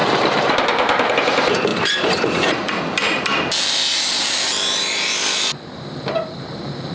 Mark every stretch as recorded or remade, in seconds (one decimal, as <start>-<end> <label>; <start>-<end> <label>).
0.0-1.1 remade; 1.1-1.7 recorded; 1.7-5.8 remade; 5.8-6.9 recorded